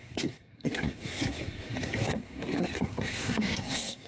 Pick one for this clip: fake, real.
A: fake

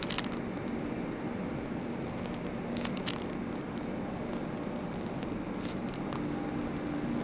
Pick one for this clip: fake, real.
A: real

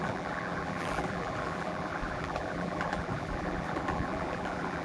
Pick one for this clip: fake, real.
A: fake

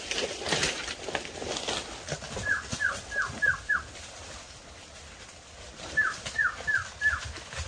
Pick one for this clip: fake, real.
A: real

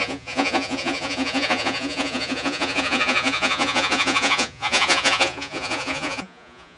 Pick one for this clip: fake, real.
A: fake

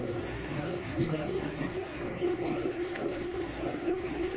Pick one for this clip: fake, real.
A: fake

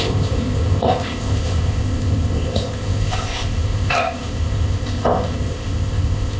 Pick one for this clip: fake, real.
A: fake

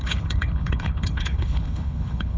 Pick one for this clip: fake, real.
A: fake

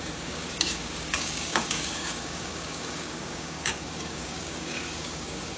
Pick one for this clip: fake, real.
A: fake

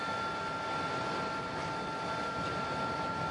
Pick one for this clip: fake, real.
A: real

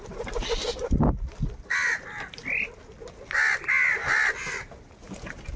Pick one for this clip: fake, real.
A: real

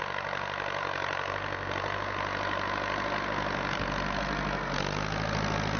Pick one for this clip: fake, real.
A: real